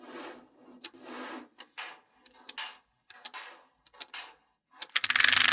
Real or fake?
real